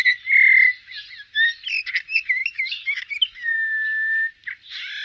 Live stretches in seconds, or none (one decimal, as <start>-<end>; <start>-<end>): 0.0-2.4; 3.0-5.0